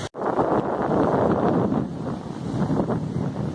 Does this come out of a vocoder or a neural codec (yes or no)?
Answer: no